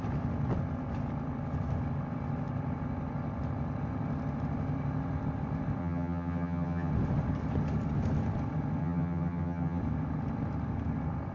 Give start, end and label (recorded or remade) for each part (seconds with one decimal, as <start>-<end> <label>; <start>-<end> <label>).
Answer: 0.0-5.8 recorded; 5.8-6.9 remade; 6.9-8.8 recorded; 8.8-9.8 remade; 9.8-11.3 recorded